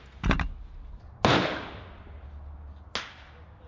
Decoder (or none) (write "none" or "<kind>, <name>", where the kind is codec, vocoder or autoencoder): none